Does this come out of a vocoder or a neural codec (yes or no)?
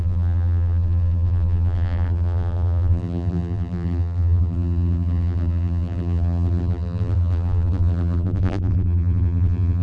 yes